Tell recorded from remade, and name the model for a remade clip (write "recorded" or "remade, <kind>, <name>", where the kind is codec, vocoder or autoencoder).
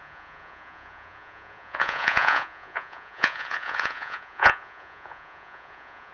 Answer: remade, vocoder, Vocos